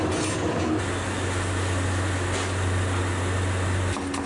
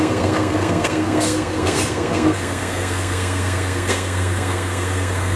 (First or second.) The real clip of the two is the first